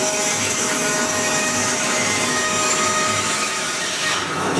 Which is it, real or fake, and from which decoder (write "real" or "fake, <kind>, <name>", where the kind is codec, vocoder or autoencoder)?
fake, autoencoder, DAC-VAE